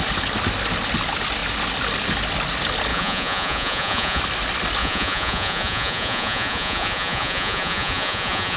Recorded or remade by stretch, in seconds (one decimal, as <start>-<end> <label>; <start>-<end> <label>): 0.0-2.9 recorded; 2.9-4.2 remade; 4.2-4.8 recorded; 4.8-8.6 remade